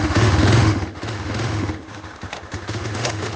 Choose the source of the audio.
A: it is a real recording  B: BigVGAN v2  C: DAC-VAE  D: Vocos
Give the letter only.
C